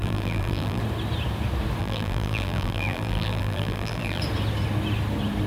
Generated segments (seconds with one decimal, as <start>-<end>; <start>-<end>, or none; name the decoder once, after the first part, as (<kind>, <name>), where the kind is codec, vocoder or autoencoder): 0.0-0.8 (vocoder, BigVGAN v2); 1.8-4.2